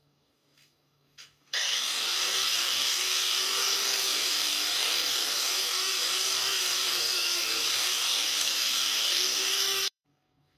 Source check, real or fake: fake